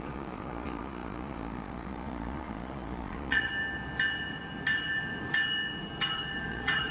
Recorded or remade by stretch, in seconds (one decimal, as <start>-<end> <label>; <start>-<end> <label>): 0.0-3.5 remade; 3.5-6.5 recorded; 6.5-6.9 remade